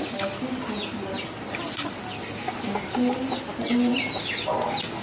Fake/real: real